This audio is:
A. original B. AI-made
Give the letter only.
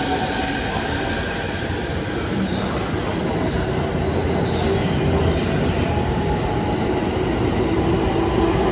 A